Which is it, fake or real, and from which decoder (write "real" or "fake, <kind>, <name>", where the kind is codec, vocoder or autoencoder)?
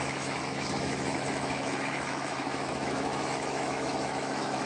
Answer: fake, autoencoder, DAC-VAE